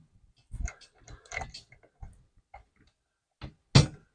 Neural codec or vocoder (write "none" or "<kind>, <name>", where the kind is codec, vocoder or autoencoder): none